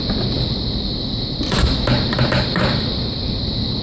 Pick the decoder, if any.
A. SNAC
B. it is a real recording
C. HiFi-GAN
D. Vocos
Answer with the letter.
B